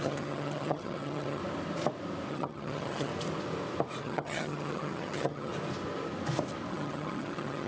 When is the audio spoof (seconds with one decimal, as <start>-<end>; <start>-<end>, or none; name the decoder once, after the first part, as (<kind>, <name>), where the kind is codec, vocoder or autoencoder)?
0.0-1.4 (vocoder, HiFi-GAN); 2.3-3.1; 4.0-5.5; 6.7-7.7

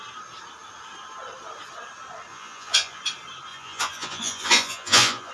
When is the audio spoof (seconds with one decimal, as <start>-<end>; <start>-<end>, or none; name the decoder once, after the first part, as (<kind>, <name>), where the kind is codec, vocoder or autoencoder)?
2.3-3.0 (vocoder, Vocos); 3.5-5.3

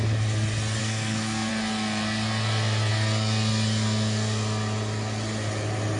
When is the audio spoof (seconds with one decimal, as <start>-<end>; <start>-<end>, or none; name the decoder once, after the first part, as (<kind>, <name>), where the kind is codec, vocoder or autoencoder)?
0.8-1.5 (codec, SNAC)

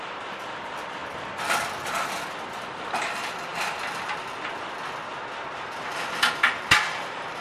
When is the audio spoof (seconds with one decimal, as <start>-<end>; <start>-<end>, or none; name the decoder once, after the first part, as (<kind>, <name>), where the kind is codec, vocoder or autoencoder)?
0.0-3.5 (vocoder, BigVGAN v2); 5.9-7.4

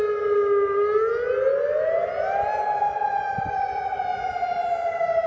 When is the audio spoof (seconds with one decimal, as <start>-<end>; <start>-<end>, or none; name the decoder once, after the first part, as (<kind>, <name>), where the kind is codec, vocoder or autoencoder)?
none